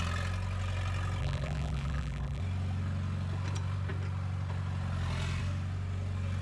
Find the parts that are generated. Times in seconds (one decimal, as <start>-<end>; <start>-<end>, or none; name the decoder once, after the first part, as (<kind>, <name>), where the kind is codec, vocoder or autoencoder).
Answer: 1.2-2.4 (vocoder, BigVGAN v2)